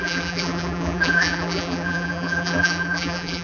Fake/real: fake